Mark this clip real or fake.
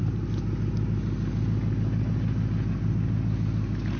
real